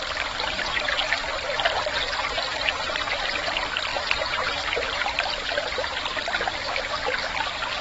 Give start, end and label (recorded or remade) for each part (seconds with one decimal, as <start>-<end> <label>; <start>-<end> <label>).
0.0-3.9 recorded; 3.9-6.0 remade; 6.0-7.8 recorded